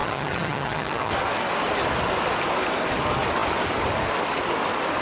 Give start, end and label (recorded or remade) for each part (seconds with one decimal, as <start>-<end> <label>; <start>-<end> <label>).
0.0-1.1 remade; 1.1-5.0 recorded